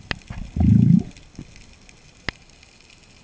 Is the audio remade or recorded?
recorded